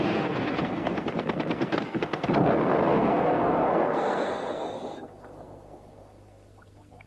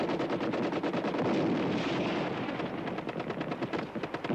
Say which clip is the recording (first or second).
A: second